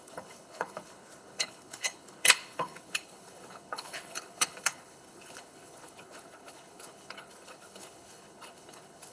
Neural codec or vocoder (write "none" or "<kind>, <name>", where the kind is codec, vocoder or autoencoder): codec, HILCodec